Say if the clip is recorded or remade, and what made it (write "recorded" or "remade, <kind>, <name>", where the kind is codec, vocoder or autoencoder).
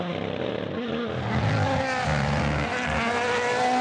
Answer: recorded